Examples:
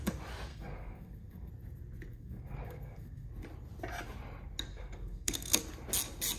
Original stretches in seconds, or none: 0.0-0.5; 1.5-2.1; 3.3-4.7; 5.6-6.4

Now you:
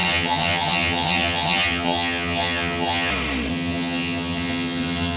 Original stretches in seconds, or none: 3.1-3.5

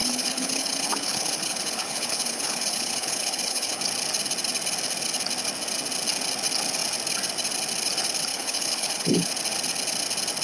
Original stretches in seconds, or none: 3.8-8.3; 9.3-10.4